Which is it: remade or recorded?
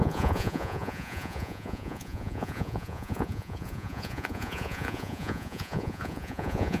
remade